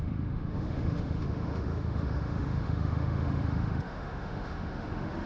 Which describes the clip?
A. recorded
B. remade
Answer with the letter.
B